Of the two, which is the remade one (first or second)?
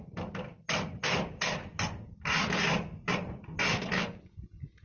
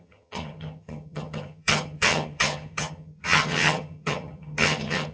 second